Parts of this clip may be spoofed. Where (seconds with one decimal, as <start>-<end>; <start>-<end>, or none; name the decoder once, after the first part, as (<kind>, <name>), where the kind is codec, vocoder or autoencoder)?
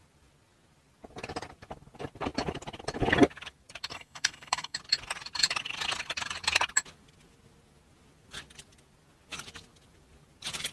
3.9-4.8 (codec, SNAC)